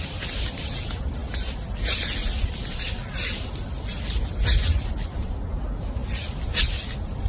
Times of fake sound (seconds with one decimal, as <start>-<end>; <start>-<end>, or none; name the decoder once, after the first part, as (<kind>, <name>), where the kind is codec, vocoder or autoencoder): none